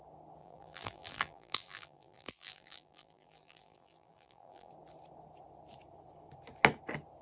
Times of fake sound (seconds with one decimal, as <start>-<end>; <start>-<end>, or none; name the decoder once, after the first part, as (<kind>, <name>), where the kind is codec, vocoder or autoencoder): 0.4-4.7 (vocoder, BigVGAN v2)